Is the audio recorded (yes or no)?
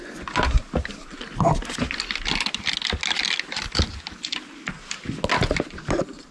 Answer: yes